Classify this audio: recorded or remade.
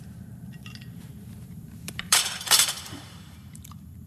remade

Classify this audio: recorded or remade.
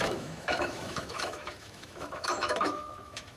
remade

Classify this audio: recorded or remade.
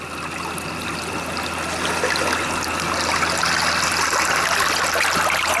recorded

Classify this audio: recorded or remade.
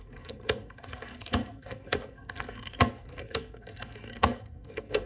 remade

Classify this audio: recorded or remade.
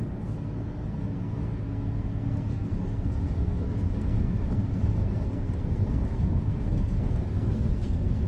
remade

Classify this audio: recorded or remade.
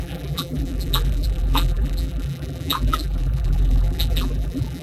remade